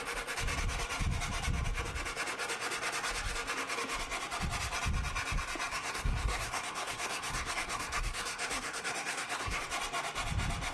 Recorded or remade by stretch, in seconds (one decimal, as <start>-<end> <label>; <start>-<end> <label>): 0.0-5.7 recorded; 5.7-9.6 remade; 9.6-10.7 recorded